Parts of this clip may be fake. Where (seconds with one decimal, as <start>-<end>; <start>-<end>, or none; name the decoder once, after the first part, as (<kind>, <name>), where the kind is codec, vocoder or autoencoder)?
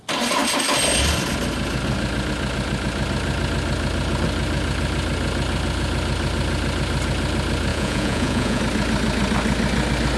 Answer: 7.7-8.6 (vocoder, Vocos)